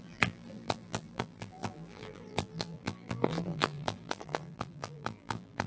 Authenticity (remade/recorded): remade